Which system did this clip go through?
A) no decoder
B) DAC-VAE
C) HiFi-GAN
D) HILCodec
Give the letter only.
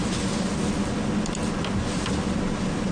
A